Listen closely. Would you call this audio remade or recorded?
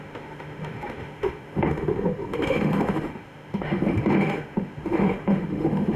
remade